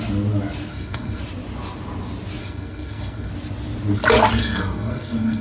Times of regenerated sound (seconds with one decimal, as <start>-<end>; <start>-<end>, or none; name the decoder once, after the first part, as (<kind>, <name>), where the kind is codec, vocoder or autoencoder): 0.7-1.2 (codec, SNAC); 2.4-3.3; 4.4-5.4